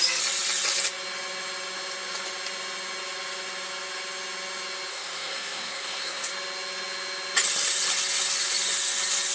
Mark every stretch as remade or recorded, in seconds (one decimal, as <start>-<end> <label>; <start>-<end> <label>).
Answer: 0.0-4.9 recorded; 4.9-6.3 remade; 6.3-9.3 recorded